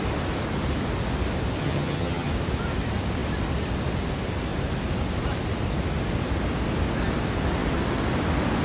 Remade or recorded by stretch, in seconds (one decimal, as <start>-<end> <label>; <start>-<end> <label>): 0.0-1.6 recorded; 1.6-2.3 remade; 2.3-8.6 recorded